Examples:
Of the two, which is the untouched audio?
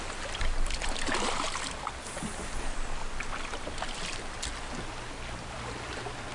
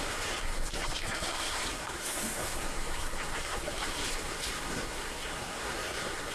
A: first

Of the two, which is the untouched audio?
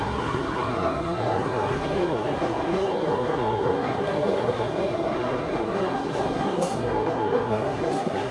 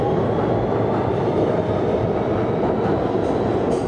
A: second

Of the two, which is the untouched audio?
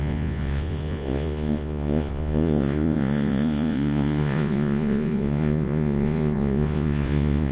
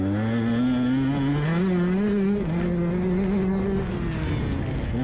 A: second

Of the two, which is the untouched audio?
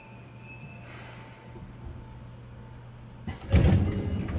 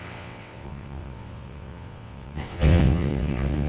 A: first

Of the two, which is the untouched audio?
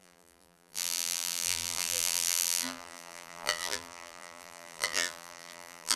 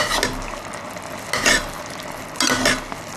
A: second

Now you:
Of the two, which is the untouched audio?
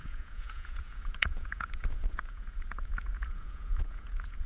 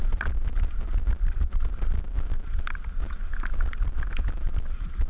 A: second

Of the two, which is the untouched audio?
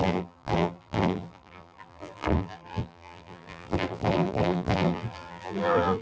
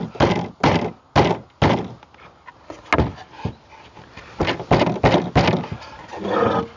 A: second